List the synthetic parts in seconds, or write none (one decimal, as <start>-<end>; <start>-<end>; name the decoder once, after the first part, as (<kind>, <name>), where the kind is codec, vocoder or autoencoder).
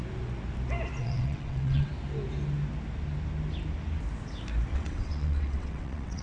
1.0-1.9 (vocoder, WaveNeXt); 4.7-6.2